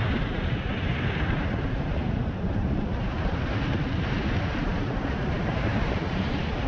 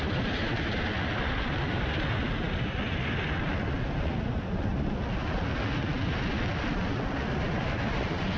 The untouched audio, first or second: second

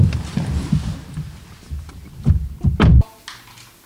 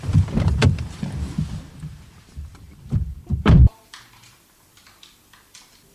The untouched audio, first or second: first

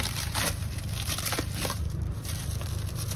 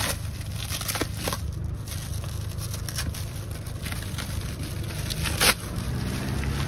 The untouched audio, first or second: second